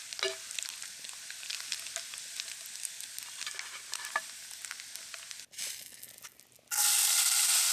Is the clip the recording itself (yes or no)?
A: yes